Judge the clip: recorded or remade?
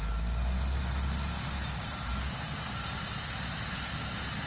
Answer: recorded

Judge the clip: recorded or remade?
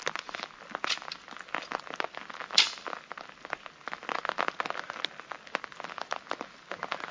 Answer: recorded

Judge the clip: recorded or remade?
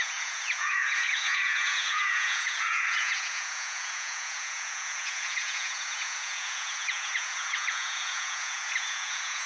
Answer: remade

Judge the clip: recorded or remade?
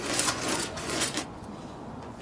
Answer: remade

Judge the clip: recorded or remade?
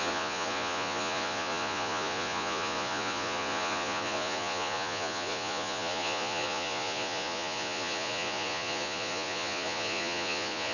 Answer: remade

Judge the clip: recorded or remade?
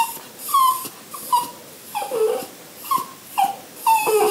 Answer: recorded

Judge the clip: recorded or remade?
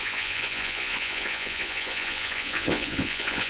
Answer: remade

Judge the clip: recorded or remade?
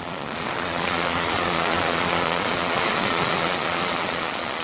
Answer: remade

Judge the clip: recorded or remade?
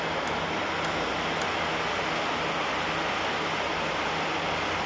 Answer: recorded